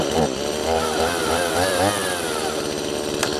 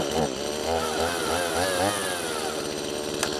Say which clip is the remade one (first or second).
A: first